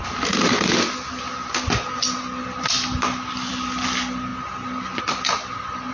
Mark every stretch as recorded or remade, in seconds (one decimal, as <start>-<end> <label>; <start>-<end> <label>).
0.0-5.9 recorded